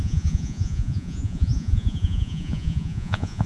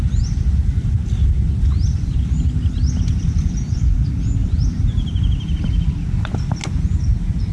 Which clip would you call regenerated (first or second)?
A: first